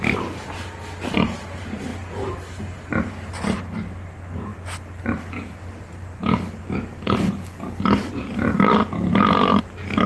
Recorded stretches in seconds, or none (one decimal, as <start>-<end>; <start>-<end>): 0.0-10.1